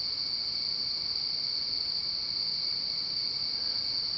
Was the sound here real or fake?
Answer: real